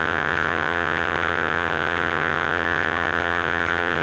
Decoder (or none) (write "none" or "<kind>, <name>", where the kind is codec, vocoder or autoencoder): vocoder, HiFi-GAN